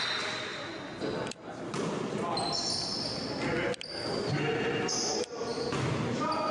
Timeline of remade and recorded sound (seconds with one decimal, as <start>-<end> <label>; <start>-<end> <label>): 0.0-6.5 recorded